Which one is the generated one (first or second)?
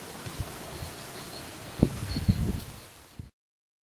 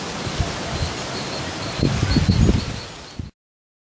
first